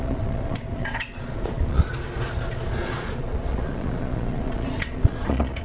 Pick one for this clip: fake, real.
fake